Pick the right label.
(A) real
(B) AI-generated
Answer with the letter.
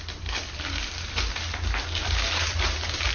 A